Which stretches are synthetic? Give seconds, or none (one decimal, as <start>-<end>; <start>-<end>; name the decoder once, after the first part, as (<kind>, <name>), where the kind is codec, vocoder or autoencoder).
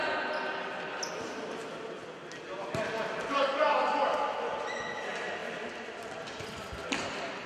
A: 4.3-7.5 (vocoder, BigVGAN v2)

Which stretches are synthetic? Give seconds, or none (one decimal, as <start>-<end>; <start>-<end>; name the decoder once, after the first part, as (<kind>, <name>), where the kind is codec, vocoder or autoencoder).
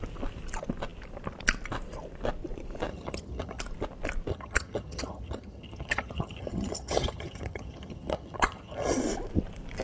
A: 2.9-3.6 (vocoder, HiFi-GAN); 4.3-9.0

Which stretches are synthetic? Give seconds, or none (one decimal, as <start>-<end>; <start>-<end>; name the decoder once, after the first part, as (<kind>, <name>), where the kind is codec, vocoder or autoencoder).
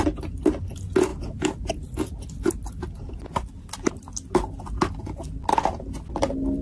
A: none